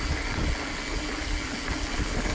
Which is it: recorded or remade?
recorded